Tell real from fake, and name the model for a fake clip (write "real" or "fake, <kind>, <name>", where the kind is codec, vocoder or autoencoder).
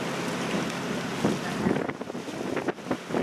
real